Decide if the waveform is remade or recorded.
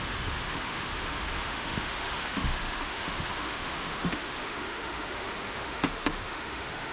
remade